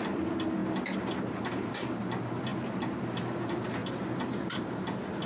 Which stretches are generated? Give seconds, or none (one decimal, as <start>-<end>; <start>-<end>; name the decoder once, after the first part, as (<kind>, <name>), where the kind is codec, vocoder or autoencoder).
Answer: none